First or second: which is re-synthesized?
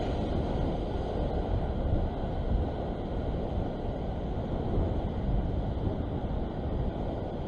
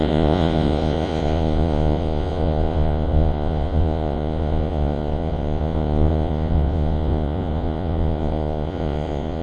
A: second